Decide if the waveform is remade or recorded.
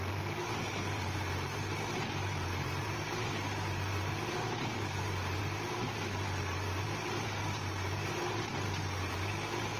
remade